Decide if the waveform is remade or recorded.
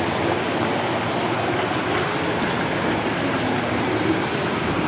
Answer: recorded